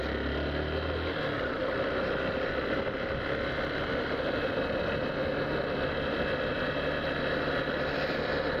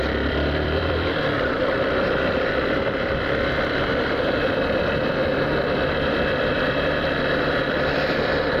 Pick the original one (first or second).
first